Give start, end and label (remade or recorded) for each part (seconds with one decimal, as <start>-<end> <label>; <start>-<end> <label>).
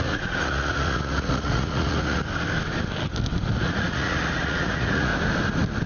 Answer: 0.0-2.3 remade; 2.3-3.6 recorded; 3.6-5.1 remade; 5.1-5.9 recorded